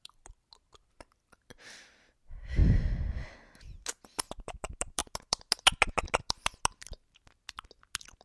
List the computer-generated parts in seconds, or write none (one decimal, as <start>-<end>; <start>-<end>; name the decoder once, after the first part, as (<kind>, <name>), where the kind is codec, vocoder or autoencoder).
none

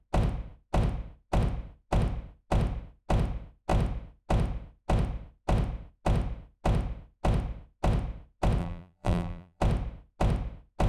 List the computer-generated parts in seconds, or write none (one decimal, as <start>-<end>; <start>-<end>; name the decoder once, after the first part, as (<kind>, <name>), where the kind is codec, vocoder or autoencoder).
8.6-9.6 (vocoder, BigVGAN v2)

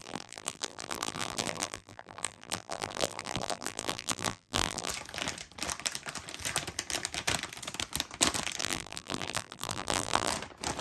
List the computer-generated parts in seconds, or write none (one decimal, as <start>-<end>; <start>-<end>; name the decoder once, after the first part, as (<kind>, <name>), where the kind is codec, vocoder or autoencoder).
0.0-4.9 (vocoder, BigVGAN v2); 8.6-10.3

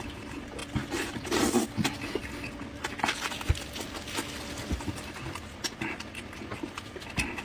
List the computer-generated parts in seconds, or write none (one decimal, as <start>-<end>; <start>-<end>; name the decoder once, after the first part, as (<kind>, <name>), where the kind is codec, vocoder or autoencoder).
none

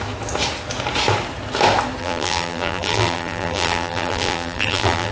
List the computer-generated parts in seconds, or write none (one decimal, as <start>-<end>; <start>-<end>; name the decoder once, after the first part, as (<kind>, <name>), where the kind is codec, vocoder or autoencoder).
2.0-5.1 (vocoder, BigVGAN v2)

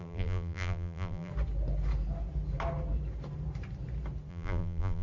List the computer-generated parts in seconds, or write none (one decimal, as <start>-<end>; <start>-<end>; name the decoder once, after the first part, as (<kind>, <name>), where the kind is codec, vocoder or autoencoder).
0.0-1.3 (vocoder, BigVGAN v2); 4.3-5.0

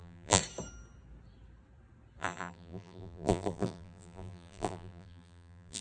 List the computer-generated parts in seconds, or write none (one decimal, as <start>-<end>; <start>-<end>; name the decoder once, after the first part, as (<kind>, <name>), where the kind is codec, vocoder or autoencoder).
0.0-0.4 (vocoder, BigVGAN v2); 2.2-5.8